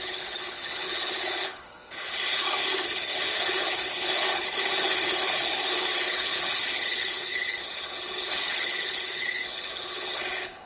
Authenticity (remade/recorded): remade